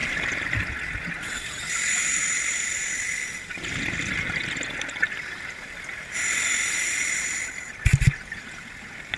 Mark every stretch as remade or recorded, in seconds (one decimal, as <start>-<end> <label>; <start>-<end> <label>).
0.0-9.2 recorded